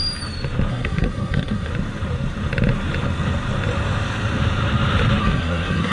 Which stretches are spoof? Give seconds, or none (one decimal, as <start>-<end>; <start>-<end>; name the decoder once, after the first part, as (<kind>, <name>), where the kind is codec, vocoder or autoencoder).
0.7-1.7 (codec, SNAC); 5.2-5.9